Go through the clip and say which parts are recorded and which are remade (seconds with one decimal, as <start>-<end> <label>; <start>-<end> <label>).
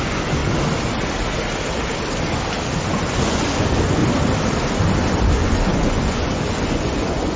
0.0-0.4 remade; 0.4-2.9 recorded; 2.9-4.0 remade; 4.0-5.3 recorded; 5.3-7.4 remade